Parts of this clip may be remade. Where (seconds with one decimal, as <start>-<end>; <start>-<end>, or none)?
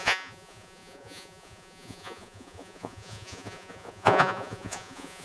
0.0-5.2